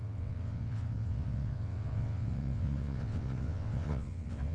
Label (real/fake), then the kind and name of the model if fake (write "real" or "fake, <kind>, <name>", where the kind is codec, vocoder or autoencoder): fake, vocoder, WaveNeXt